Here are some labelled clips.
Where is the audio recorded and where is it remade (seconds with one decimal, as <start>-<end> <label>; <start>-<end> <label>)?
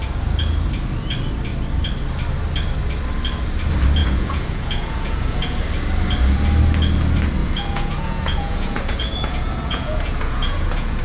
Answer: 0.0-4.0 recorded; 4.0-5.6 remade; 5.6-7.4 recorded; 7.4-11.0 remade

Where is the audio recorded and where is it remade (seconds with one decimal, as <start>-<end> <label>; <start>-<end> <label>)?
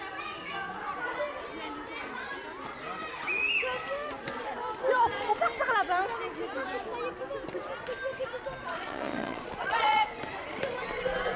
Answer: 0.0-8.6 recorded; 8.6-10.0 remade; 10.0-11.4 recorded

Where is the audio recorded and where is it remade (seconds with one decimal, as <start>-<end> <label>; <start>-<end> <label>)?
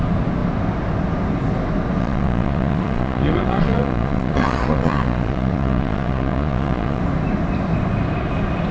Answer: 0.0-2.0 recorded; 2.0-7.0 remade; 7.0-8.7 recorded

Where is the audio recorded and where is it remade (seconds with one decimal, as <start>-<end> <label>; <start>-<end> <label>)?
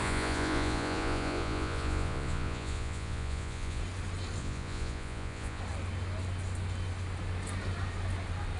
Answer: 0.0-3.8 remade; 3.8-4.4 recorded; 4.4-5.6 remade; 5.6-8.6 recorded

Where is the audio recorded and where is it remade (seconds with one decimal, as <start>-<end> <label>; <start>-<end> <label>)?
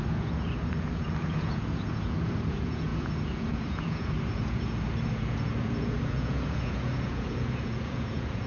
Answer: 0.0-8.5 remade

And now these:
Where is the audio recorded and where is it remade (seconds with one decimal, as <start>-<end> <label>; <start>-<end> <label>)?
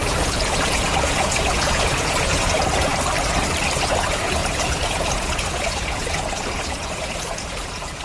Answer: 0.0-2.9 remade; 2.9-3.8 recorded; 3.8-8.0 remade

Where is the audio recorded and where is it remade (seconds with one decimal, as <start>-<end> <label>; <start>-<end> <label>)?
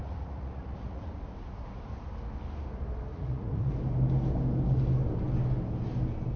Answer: 0.0-1.1 remade; 1.1-3.1 recorded; 3.1-3.7 remade; 3.7-6.4 recorded